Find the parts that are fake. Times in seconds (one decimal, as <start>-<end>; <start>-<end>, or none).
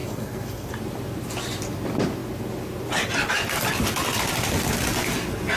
0.0-0.7